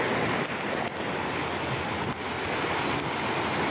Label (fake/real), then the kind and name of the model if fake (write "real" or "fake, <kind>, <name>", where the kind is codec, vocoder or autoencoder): real